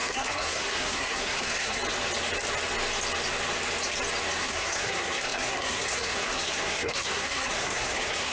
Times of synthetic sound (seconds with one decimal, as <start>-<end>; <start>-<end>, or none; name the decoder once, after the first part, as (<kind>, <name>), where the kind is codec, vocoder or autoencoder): 0.0-1.8 (codec, SNAC); 4.4-8.3